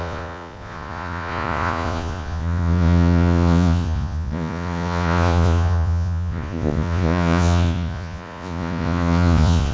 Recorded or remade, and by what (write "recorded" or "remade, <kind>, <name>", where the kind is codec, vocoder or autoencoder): remade, vocoder, Vocos